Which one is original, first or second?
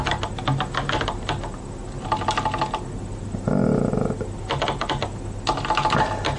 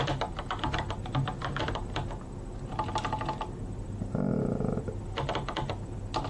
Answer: first